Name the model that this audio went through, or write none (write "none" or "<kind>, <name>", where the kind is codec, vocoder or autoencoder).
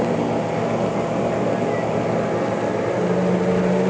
none